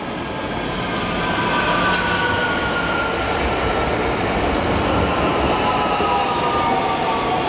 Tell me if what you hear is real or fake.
real